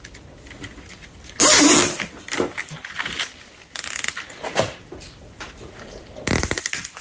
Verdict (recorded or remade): recorded